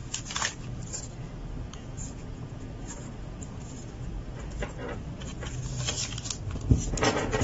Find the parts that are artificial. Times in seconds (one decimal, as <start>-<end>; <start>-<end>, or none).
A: 1.9-3.9